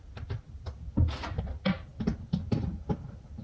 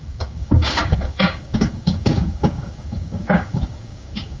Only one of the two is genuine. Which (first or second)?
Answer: first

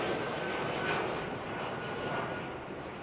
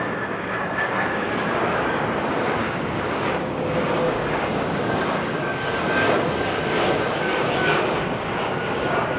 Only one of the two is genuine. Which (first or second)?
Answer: first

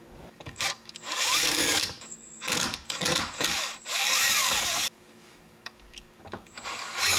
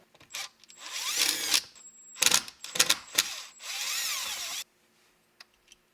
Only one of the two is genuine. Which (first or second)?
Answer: second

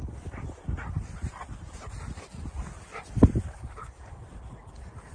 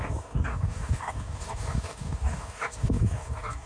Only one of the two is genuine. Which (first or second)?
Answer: first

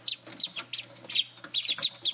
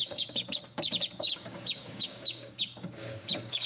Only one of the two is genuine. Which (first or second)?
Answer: first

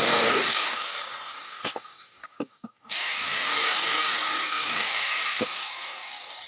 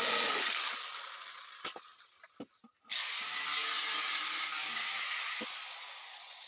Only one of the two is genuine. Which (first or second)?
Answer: second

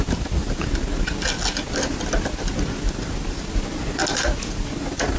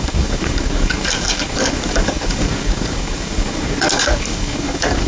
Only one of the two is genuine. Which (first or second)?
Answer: first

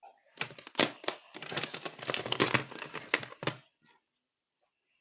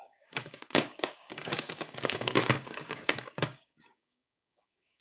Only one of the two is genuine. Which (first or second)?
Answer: first